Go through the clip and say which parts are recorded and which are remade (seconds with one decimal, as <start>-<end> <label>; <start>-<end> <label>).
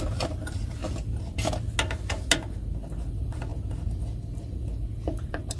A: 0.0-0.8 remade; 0.8-3.1 recorded; 3.1-3.5 remade; 3.5-5.0 recorded; 5.0-5.6 remade